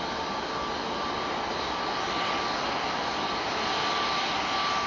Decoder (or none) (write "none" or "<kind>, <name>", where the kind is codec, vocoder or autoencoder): none